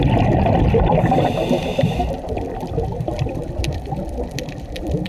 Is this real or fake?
fake